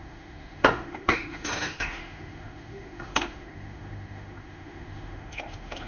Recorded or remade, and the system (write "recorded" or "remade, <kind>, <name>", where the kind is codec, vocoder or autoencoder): remade, autoencoder, DAC-VAE